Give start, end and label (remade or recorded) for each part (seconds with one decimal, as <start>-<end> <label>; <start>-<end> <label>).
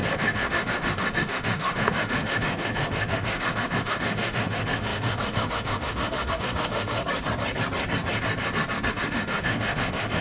0.0-7.0 remade; 7.0-8.9 recorded; 8.9-10.2 remade